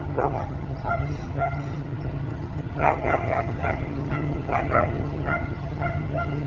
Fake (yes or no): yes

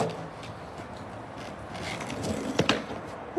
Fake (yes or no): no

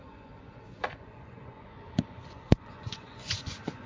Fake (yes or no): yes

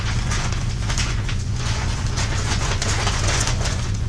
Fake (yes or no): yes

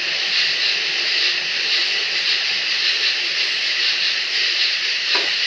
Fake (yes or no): no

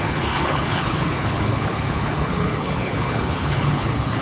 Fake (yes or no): yes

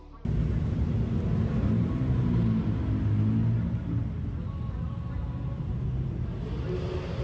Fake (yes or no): no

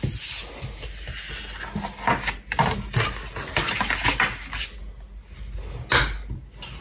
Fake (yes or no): no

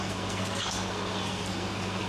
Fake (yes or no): yes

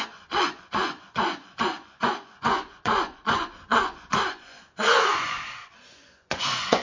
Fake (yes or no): yes